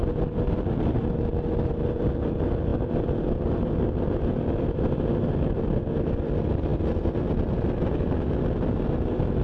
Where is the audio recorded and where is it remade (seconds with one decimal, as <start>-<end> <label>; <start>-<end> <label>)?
0.0-9.4 recorded